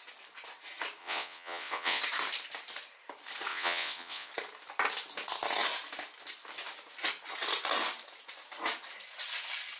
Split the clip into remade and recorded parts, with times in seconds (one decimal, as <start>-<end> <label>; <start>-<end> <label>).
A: 0.0-1.0 recorded; 1.0-2.0 remade; 2.0-3.5 recorded; 3.5-4.3 remade; 4.3-9.8 recorded

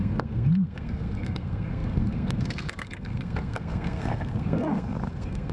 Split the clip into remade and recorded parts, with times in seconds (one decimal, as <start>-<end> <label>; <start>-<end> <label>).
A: 0.0-5.5 remade